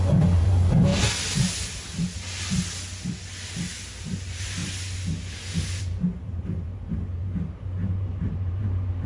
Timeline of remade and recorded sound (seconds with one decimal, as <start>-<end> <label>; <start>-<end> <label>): 0.0-0.9 remade; 0.9-4.0 recorded; 4.0-4.6 remade; 4.6-5.8 recorded; 5.8-9.1 remade